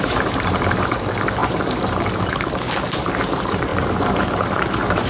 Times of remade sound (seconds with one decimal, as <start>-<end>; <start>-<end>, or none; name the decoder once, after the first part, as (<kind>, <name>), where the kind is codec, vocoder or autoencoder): 0.0-5.1 (vocoder, BigVGAN v2)